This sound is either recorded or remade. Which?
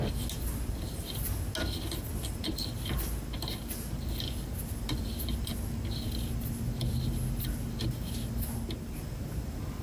recorded